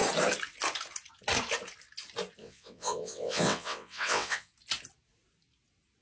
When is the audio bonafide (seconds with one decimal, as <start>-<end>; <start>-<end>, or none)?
0.0-2.4; 4.5-6.0